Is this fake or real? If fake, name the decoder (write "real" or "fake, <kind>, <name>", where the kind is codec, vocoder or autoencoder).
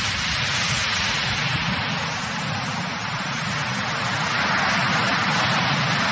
real